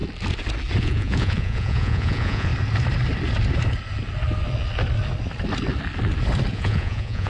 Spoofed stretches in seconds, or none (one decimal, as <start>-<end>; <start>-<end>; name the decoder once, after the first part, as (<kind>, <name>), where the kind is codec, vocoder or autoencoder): 0.8-2.5 (vocoder, Vocos); 6.5-7.3